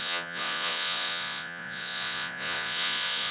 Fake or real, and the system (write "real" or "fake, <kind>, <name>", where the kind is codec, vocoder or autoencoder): fake, vocoder, Vocos